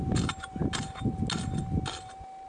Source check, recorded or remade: recorded